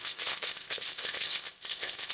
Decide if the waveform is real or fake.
fake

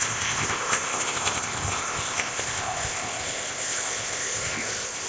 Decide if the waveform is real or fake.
fake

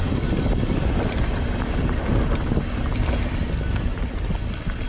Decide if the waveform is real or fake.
real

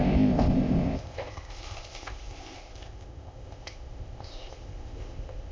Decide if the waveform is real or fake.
fake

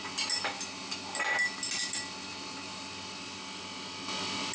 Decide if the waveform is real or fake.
real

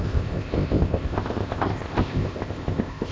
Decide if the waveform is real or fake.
fake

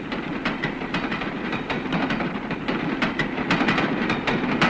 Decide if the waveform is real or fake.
real